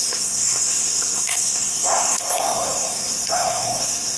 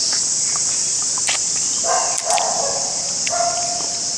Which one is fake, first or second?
first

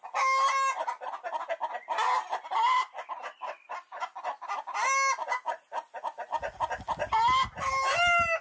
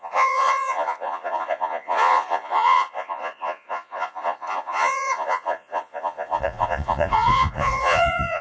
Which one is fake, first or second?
second